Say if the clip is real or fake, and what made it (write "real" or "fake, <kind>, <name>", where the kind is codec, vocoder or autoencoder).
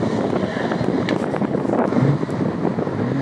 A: real